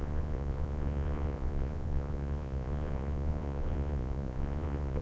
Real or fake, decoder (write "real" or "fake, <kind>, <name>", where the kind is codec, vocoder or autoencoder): fake, vocoder, Vocos